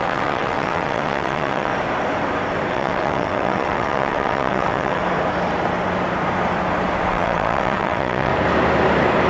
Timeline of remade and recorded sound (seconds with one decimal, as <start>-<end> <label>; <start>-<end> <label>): 0.0-1.7 remade; 1.7-2.7 recorded; 2.7-5.0 remade; 5.0-7.1 recorded; 7.1-8.3 remade; 8.3-9.3 recorded

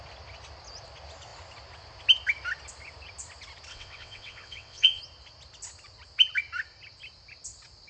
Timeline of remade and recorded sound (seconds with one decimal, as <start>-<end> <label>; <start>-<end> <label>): 0.0-3.7 recorded; 3.7-5.0 remade; 5.0-7.9 recorded

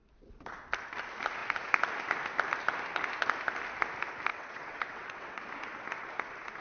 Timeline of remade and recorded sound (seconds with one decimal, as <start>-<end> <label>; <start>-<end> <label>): 0.0-4.3 recorded; 4.3-5.4 remade; 5.4-6.6 recorded

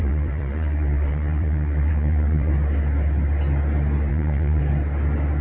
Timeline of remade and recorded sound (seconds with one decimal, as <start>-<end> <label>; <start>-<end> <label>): 0.0-2.5 remade; 2.5-4.1 recorded; 4.1-4.6 remade; 4.6-5.4 recorded

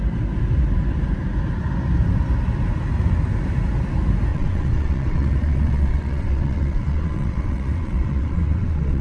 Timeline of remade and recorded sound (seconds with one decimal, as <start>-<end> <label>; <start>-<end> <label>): 0.0-4.3 recorded; 4.3-9.0 remade